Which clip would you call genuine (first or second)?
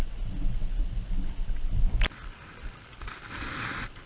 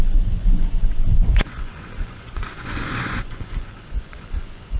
first